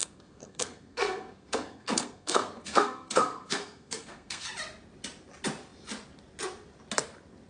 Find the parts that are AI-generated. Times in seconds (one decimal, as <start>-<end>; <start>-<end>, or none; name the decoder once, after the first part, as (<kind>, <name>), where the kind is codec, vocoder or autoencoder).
0.0-4.5 (codec, SNAC)